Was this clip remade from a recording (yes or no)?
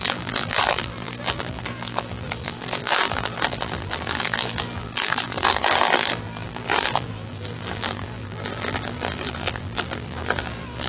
yes